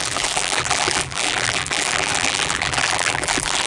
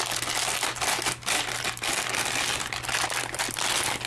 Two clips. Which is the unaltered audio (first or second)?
second